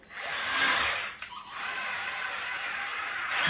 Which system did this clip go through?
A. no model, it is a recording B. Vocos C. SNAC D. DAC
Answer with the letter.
A